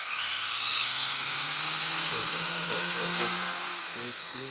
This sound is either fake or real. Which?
fake